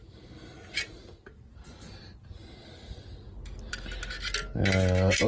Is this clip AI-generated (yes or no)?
no